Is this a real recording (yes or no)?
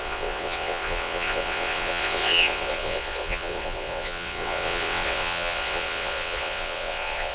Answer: no